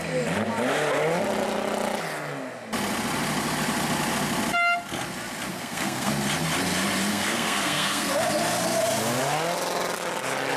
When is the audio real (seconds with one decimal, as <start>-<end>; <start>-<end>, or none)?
0.0-5.5; 6.1-7.1; 8.1-10.6